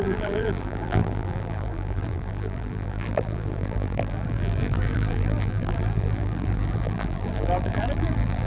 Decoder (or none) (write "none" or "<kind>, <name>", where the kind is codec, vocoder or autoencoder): vocoder, BigVGAN v2